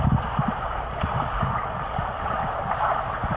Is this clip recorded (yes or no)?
yes